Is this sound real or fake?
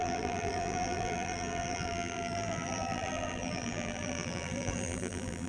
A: fake